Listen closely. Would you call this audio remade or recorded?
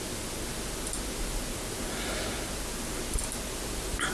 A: recorded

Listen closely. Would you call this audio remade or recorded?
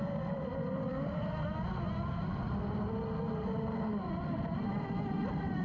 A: recorded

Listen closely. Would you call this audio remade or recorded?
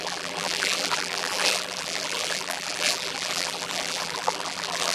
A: remade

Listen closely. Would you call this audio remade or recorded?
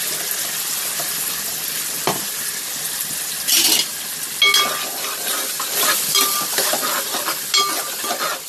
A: recorded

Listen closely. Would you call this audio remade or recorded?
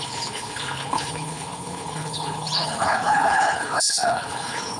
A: remade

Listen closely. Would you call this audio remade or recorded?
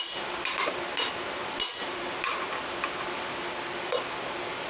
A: recorded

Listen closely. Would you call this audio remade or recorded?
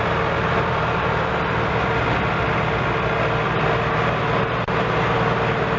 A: recorded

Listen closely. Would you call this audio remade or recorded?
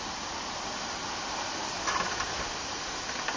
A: recorded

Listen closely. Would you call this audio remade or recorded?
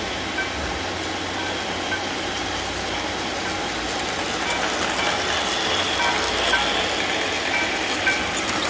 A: recorded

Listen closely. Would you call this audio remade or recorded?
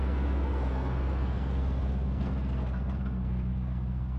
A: remade